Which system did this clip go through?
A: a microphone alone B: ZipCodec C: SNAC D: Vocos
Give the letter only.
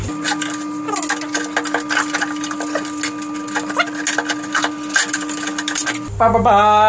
A